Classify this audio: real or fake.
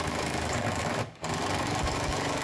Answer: fake